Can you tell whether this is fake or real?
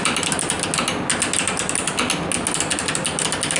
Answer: real